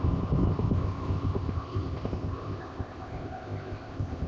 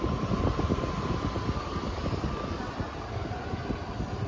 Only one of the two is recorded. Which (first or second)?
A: second